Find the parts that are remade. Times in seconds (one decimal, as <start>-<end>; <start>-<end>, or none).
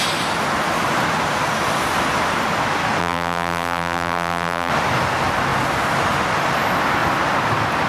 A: 3.0-4.7